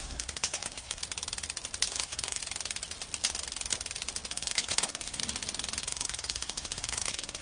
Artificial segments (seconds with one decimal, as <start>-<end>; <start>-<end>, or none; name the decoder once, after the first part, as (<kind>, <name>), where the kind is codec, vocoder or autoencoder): 0.0-1.0 (codec, SNAC); 1.9-2.4; 4.3-5.2; 5.8-7.4